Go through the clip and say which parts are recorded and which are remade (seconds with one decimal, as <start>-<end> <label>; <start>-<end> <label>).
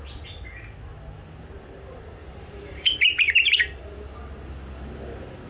0.0-2.2 recorded; 2.2-3.8 remade; 3.8-5.5 recorded